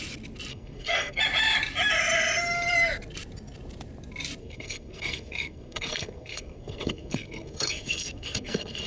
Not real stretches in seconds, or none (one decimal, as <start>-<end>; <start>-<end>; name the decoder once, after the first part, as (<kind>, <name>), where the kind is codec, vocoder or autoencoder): 0.5-1.2 (codec, SNAC); 4.4-8.9